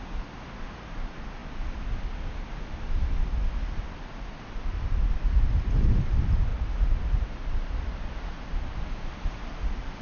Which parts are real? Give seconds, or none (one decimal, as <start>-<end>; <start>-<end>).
0.0-6.5; 7.3-10.0